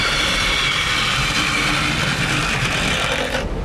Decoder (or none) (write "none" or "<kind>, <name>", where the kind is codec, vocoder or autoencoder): none